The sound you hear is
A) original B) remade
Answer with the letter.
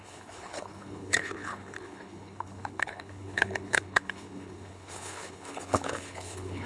B